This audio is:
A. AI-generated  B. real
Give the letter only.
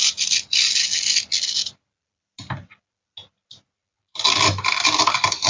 B